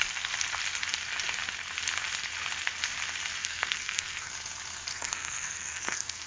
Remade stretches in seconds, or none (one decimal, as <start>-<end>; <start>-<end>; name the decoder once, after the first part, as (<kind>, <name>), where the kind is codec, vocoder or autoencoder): 3.4-4.3 (codec, SNAC); 4.9-6.3